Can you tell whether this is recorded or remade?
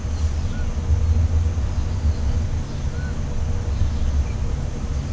recorded